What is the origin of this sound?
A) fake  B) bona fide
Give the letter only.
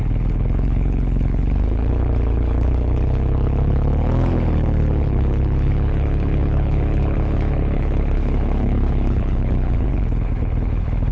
A